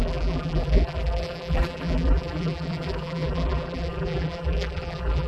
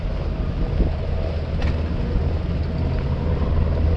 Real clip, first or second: second